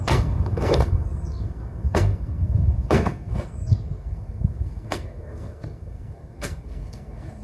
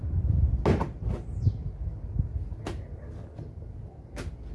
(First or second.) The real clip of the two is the second